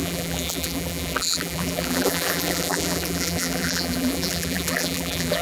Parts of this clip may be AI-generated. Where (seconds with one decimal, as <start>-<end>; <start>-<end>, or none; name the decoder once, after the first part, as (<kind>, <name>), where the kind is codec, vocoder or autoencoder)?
0.0-5.4 (vocoder, BigVGAN v2)